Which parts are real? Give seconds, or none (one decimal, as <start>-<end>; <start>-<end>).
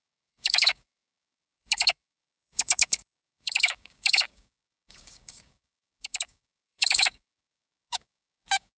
none